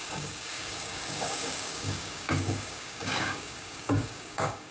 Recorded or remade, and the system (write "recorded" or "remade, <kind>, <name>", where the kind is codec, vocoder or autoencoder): remade, codec, DAC